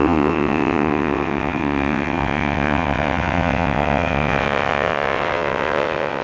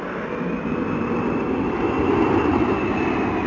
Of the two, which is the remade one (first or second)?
first